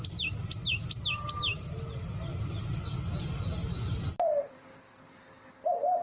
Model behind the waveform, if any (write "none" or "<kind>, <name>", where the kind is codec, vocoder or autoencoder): none